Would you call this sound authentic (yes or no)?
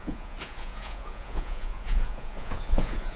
no